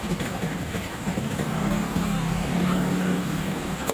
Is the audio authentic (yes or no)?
no